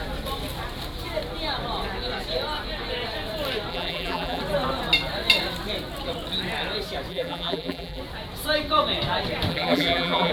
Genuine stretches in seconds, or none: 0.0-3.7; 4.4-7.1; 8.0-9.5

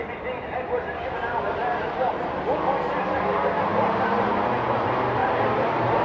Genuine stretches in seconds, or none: 0.0-1.6; 2.1-3.7; 4.3-5.2

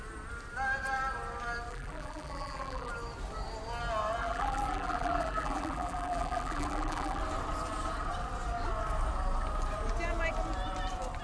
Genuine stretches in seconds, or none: 0.0-1.7; 2.9-4.2; 7.2-11.2